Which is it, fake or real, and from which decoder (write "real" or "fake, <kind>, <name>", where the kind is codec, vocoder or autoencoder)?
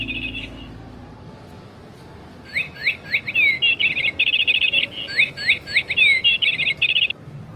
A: real